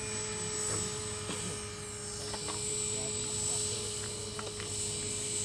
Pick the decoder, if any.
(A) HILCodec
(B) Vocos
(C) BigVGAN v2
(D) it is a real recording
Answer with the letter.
D